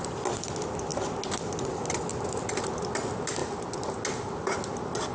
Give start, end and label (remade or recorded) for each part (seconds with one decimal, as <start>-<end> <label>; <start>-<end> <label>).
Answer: 0.0-5.1 recorded